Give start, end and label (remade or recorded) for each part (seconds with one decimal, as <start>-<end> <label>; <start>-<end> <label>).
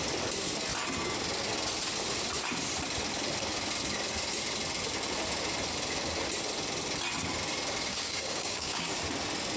0.0-7.9 recorded; 7.9-8.9 remade; 8.9-9.6 recorded